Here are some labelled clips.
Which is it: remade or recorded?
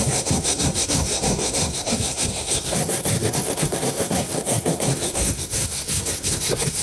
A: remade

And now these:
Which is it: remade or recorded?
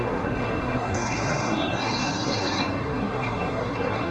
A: remade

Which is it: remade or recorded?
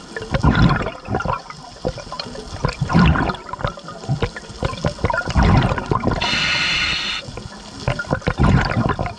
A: recorded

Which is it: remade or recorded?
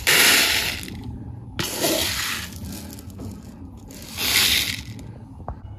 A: recorded